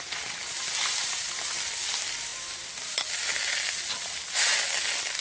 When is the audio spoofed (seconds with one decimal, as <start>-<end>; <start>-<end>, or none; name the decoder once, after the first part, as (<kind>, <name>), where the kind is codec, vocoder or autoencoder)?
none